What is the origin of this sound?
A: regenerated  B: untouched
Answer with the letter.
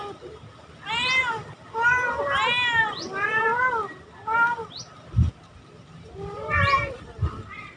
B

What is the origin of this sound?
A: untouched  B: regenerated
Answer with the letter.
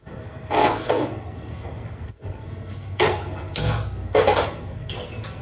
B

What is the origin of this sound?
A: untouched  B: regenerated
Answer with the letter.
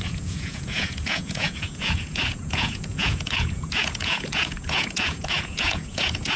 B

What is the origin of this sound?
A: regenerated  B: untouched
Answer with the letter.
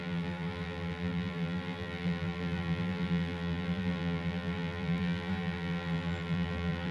A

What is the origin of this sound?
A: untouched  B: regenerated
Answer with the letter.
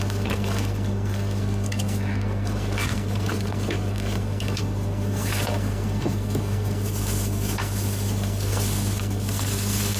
B